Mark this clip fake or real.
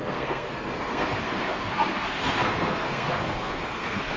fake